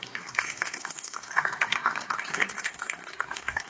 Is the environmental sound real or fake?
fake